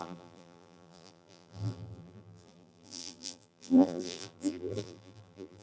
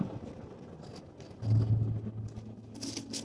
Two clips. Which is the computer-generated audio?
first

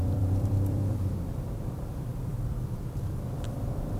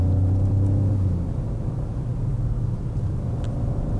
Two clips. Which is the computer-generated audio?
first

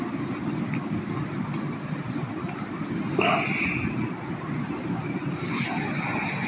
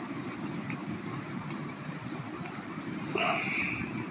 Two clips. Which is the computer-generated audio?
second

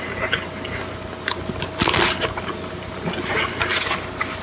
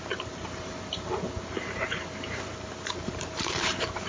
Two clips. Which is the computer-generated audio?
second